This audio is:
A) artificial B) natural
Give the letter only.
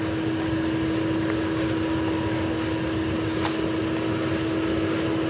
B